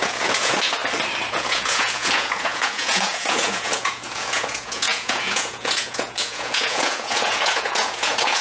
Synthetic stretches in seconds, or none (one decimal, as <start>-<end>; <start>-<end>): 0.0-0.8; 1.3-8.4